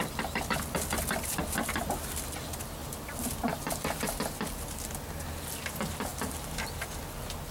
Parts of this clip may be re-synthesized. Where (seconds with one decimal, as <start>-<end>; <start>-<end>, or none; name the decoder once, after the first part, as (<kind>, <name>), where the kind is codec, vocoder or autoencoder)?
none